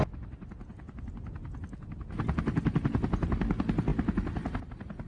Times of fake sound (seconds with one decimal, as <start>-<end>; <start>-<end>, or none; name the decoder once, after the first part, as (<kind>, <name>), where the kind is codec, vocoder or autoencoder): none